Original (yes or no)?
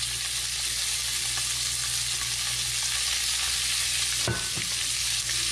yes